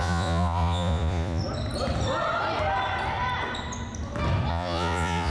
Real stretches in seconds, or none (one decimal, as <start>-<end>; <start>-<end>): 1.4-4.5